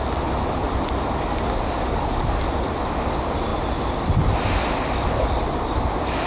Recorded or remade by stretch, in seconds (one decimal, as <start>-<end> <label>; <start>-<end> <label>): 0.0-6.3 recorded